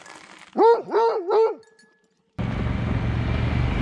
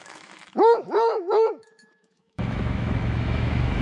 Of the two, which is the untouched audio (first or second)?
first